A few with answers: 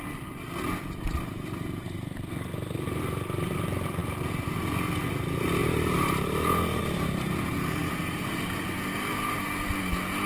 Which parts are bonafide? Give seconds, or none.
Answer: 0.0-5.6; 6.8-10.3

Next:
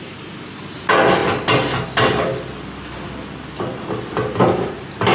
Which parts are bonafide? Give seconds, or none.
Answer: 0.0-5.1

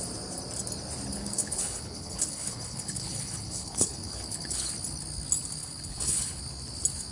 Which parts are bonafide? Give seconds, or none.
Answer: 0.0-1.1; 4.7-5.6; 6.4-7.1

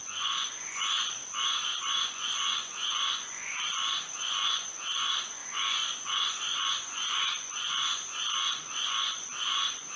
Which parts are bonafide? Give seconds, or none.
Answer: 1.2-1.8